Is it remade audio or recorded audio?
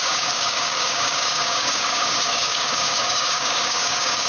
remade